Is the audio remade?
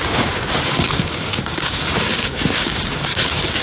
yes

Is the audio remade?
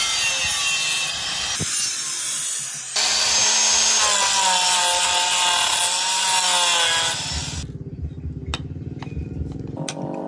no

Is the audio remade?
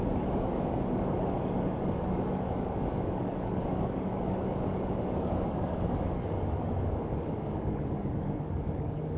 yes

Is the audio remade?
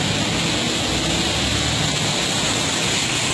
no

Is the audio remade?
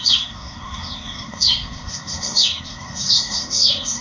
yes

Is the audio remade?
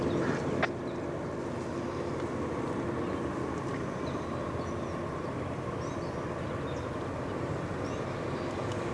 no